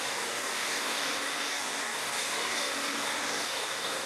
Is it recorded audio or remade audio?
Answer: remade